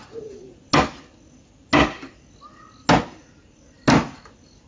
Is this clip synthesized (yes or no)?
no